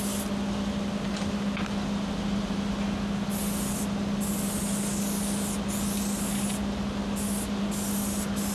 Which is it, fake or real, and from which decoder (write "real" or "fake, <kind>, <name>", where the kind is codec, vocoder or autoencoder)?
real